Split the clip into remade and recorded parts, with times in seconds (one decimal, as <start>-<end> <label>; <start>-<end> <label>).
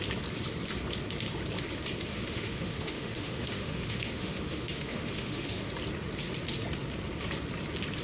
0.0-2.1 recorded; 2.1-5.7 remade; 5.7-8.0 recorded